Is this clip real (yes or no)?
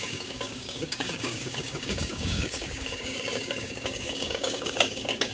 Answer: no